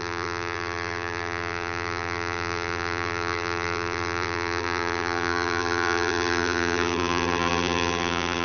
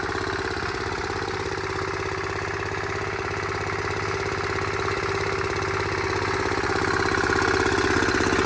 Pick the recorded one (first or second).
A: second